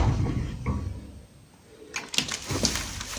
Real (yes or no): yes